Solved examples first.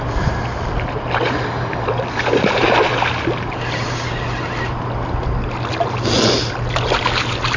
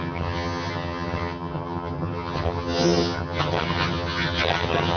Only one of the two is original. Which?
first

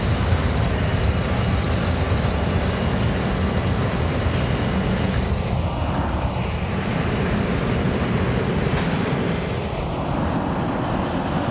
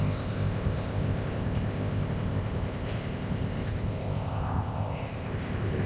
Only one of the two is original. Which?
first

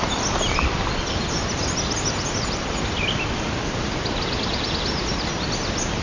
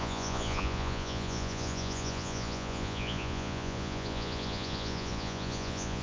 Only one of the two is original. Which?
first